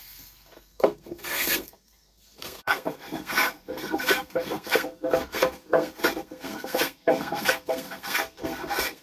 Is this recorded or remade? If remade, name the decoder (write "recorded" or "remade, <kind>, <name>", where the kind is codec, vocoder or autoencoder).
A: remade, codec, SNAC